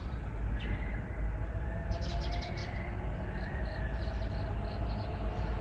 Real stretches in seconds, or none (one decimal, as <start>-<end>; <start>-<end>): 0.0-5.6